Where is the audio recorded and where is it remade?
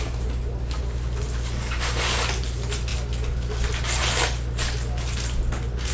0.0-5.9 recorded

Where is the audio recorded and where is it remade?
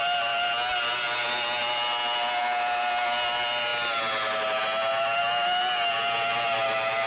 0.0-7.1 recorded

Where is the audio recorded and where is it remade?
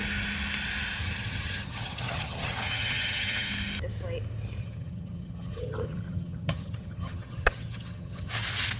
0.0-1.0 recorded; 1.0-3.5 remade; 3.5-4.6 recorded; 4.6-8.3 remade; 8.3-8.8 recorded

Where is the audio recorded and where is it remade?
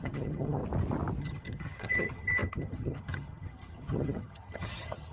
0.0-0.6 remade; 0.6-1.2 recorded; 1.2-5.1 remade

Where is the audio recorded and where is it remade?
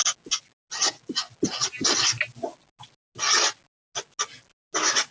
0.0-5.1 recorded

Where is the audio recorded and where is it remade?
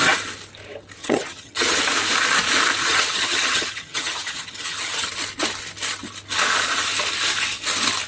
0.0-1.0 recorded; 1.0-1.8 remade; 1.8-2.8 recorded; 2.8-5.1 remade; 5.1-8.1 recorded